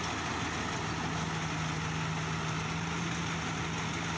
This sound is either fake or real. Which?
real